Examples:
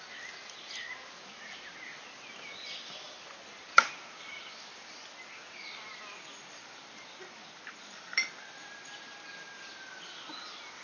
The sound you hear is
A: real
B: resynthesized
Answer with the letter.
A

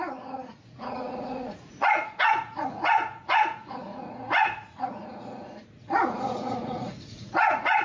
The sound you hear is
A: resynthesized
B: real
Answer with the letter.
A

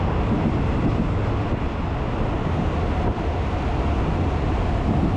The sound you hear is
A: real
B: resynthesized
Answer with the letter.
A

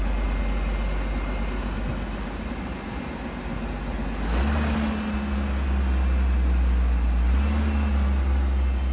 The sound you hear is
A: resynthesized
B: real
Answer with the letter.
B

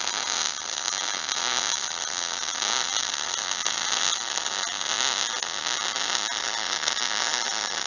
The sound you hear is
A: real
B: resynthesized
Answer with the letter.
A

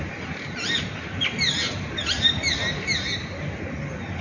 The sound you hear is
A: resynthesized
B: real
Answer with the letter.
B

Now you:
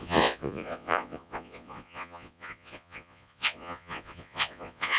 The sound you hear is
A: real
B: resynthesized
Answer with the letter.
B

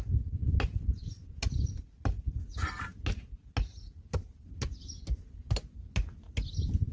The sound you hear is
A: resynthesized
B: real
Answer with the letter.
B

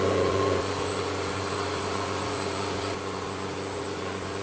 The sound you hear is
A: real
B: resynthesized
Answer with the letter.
B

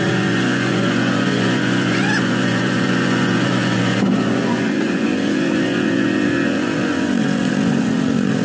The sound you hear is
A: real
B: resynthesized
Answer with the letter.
B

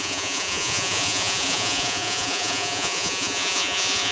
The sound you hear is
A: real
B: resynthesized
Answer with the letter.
B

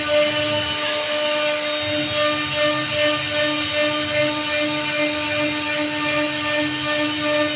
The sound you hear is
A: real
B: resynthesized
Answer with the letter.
A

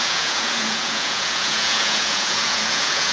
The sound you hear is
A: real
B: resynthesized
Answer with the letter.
B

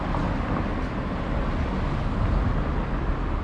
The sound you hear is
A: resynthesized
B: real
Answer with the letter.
B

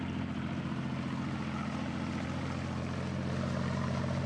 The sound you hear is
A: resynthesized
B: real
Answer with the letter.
B